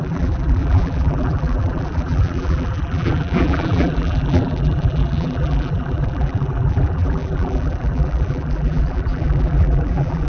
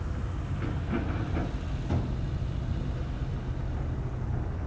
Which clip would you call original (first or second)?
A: second